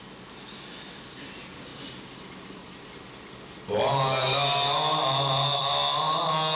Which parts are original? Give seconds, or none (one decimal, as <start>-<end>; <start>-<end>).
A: 0.0-6.5